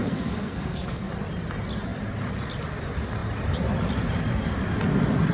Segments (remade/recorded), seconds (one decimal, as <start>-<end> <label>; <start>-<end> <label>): 0.0-1.1 remade; 1.1-5.3 recorded